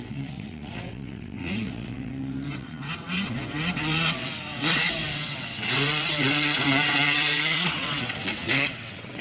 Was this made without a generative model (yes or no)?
no